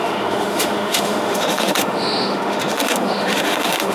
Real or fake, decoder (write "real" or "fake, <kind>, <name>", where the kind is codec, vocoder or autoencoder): fake, autoencoder, DAC-VAE